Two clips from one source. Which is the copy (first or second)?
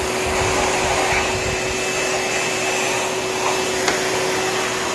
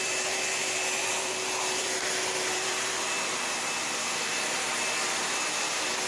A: second